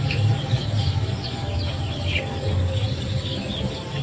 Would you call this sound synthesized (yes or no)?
yes